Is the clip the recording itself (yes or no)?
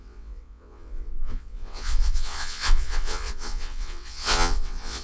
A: no